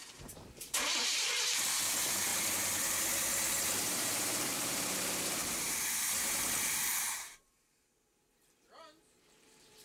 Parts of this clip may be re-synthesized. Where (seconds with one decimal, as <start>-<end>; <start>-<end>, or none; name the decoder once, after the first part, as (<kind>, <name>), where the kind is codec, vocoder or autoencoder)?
0.0-2.3 (vocoder, BigVGAN v2); 3.6-5.4; 6.3-9.8